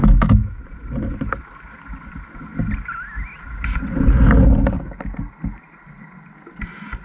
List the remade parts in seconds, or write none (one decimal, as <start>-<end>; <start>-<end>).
0.0-0.6